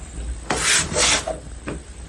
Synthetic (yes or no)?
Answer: no